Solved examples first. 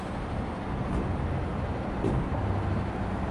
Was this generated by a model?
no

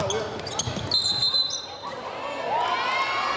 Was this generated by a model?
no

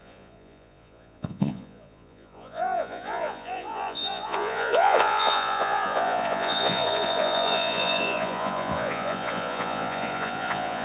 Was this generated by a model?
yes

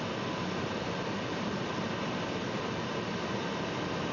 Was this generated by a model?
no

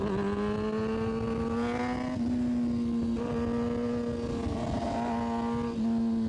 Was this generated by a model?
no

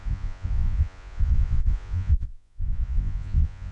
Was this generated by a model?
yes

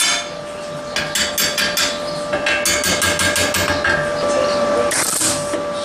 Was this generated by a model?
no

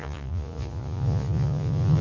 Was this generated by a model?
yes